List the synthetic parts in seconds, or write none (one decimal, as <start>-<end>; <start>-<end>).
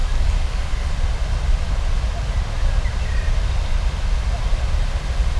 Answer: 0.0-0.9